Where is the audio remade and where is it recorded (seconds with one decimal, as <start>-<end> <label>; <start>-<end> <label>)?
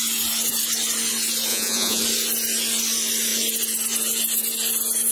0.0-1.5 recorded; 1.5-2.0 remade; 2.0-5.1 recorded